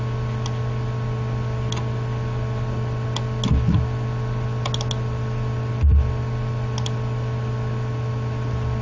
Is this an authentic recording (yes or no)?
yes